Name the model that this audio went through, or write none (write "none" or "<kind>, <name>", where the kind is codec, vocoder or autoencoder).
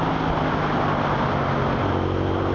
none